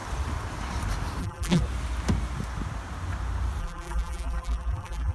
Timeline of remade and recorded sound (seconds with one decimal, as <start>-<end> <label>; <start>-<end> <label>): 0.0-1.2 recorded; 1.2-1.6 remade; 1.6-3.6 recorded; 3.6-5.1 remade